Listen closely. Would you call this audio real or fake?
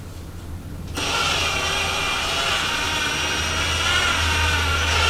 real